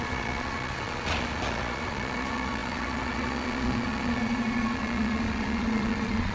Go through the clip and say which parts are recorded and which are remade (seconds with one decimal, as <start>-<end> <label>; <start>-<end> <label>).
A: 0.0-6.3 remade

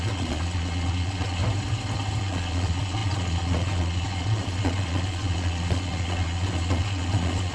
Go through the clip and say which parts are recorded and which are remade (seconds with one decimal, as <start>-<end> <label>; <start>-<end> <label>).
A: 0.0-1.4 remade; 1.4-2.2 recorded; 2.2-7.5 remade